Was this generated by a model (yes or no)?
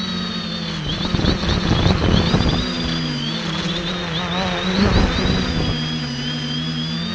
no